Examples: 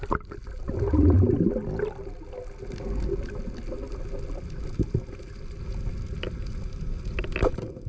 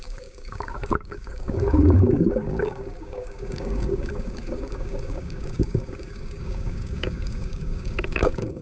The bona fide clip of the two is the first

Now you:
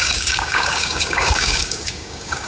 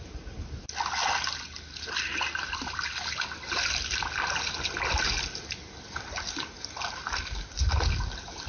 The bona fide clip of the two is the second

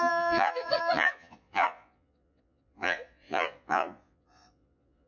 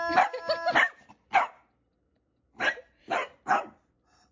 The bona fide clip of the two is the second